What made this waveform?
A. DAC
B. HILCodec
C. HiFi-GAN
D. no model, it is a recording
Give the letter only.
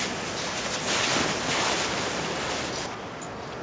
D